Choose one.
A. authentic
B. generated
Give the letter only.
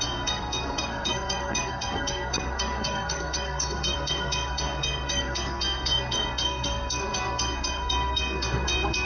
B